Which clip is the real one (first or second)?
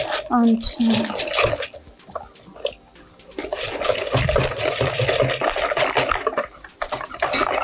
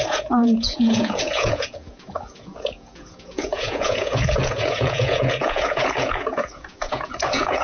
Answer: first